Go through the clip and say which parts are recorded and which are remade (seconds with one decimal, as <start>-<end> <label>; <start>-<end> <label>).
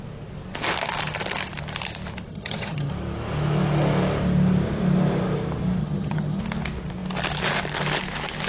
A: 0.0-2.3 recorded; 2.3-2.9 remade; 2.9-5.8 recorded; 5.8-6.4 remade; 6.4-8.5 recorded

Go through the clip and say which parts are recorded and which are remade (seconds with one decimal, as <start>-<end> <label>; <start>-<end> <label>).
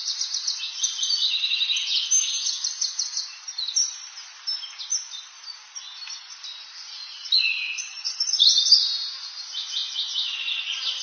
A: 0.0-11.0 recorded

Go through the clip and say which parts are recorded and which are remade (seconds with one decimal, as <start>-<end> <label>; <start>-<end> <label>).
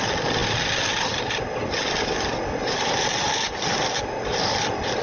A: 0.0-5.0 recorded